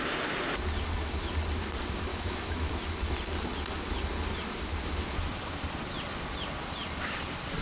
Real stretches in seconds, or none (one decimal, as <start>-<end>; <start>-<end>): 0.0-2.1; 2.7-7.6